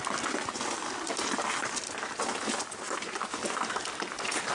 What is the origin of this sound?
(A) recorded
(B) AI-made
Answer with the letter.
A